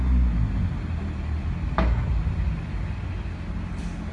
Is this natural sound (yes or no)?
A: yes